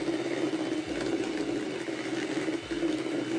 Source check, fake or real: real